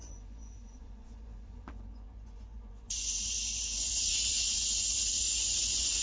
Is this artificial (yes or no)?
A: yes